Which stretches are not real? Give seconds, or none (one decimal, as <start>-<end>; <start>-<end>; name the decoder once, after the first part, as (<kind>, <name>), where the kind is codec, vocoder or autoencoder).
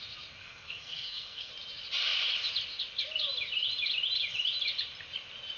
0.4-1.5 (codec, SNAC)